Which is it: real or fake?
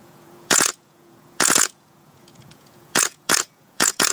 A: fake